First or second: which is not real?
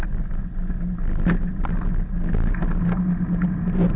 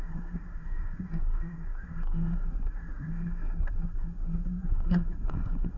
second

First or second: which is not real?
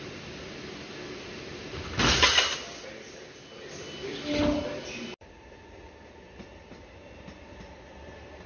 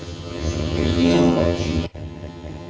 second